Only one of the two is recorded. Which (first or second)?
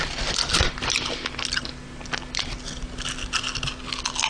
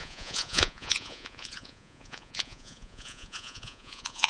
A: first